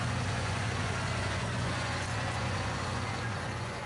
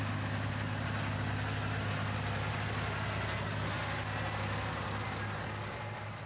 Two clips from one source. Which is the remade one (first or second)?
first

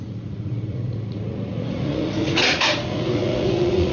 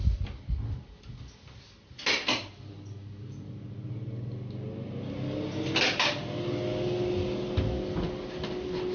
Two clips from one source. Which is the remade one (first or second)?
first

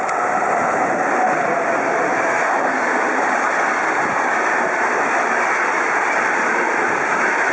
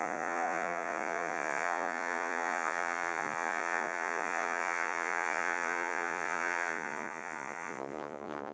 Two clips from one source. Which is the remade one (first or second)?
second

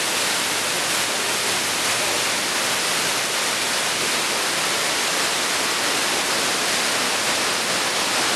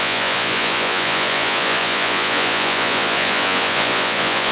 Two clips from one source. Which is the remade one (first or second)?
second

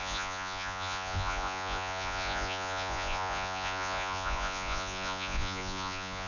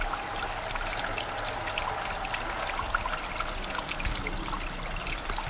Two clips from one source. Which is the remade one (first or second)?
first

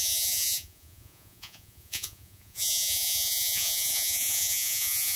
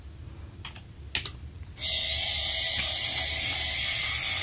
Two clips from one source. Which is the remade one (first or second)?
first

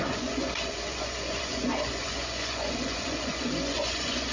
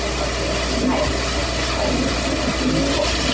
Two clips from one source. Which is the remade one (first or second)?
first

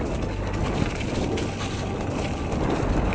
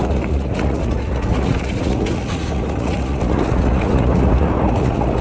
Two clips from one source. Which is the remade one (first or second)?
second